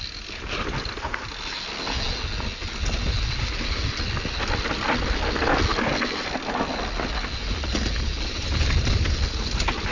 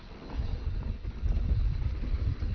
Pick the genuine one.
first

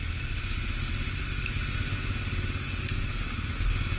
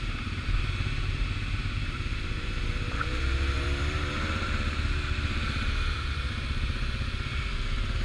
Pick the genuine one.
first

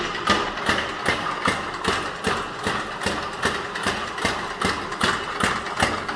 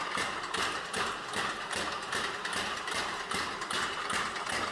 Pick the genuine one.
first